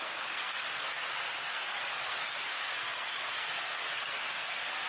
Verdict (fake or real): fake